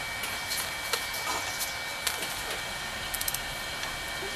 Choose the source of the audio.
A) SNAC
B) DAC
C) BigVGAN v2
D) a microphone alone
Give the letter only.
D